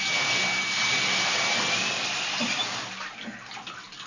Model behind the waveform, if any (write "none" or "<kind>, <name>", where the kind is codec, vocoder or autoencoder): none